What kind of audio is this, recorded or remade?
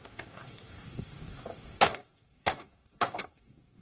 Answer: remade